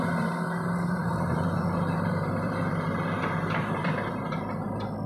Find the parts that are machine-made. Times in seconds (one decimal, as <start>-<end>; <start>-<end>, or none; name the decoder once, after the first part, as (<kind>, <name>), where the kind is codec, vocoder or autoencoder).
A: 1.0-4.1 (vocoder, BigVGAN v2)